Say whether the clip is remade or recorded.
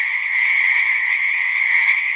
remade